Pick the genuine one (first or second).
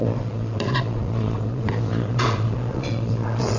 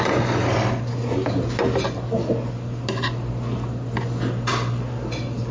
second